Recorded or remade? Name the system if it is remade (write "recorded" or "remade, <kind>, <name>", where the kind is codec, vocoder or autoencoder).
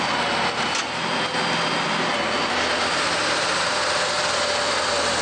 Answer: recorded